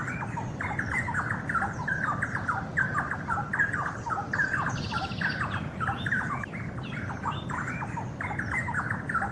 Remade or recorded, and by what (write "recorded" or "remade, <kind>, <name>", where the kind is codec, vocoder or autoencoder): recorded